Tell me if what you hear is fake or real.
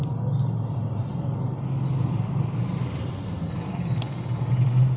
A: real